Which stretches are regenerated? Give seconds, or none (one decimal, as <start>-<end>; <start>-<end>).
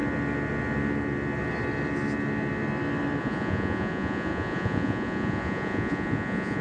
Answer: 3.2-6.6